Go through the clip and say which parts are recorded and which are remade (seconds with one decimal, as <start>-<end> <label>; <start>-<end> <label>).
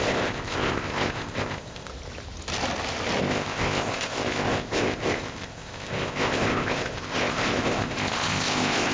0.0-1.9 remade; 1.9-3.2 recorded; 3.2-8.9 remade